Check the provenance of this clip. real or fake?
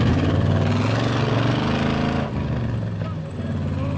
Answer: real